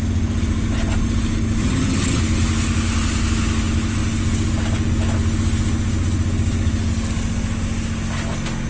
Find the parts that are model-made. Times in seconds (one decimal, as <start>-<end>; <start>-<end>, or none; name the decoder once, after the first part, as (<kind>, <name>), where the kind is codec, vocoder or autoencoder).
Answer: 1.6-2.2 (vocoder, HiFi-GAN)